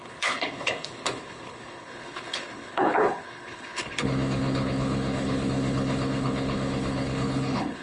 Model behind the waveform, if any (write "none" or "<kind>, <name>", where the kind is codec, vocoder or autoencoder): codec, HILCodec